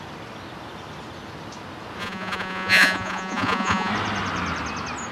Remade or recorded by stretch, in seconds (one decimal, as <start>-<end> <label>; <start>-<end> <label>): 0.0-2.0 recorded; 2.0-3.9 remade; 3.9-5.1 recorded